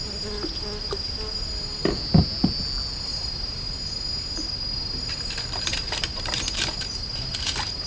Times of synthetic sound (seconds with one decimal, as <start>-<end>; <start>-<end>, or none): 3.1-3.9